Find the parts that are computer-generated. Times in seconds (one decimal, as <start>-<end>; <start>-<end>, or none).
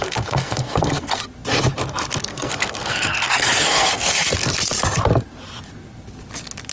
0.0-1.2; 2.3-4.4